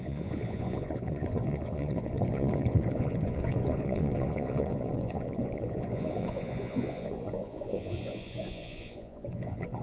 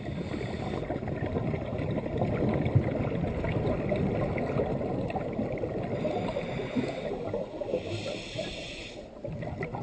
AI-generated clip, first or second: first